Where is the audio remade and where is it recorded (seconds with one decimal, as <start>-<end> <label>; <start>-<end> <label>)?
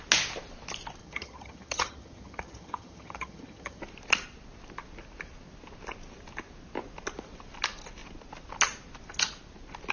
0.0-1.0 recorded; 1.0-3.8 remade; 3.8-9.9 recorded